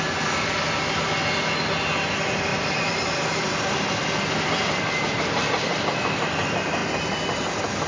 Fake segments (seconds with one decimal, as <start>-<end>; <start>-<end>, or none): 2.5-3.9